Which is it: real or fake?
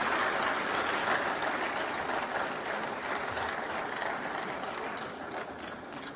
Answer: real